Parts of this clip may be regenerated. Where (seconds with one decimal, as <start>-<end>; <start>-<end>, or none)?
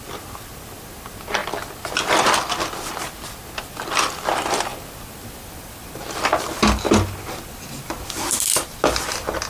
none